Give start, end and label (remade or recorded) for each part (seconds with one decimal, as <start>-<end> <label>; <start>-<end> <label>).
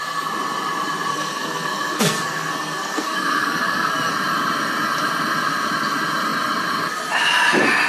0.0-1.1 recorded; 1.1-4.1 remade; 4.1-7.9 recorded